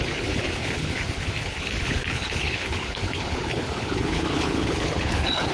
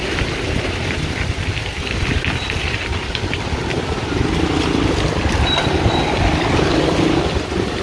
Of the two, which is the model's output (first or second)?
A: first